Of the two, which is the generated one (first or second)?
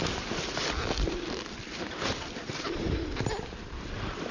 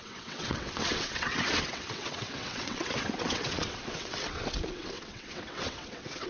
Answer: second